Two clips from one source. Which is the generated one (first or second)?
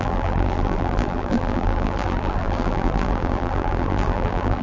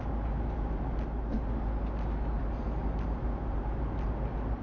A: first